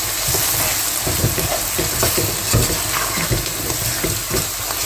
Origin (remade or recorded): recorded